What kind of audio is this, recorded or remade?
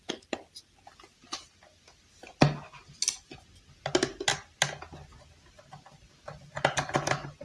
recorded